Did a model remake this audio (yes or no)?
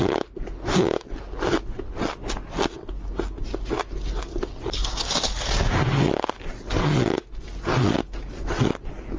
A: no